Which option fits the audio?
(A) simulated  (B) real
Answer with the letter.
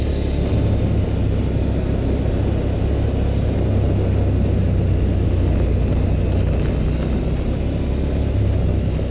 B